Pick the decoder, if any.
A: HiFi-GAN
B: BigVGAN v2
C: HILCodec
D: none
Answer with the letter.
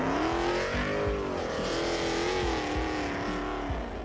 D